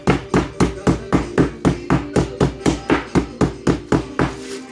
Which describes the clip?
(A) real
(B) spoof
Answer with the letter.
A